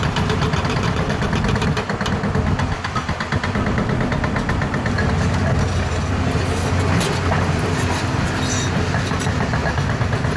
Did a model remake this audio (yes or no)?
no